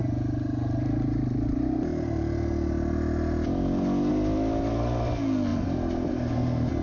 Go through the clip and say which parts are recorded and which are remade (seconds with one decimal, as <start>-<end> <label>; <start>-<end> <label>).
0.0-6.8 recorded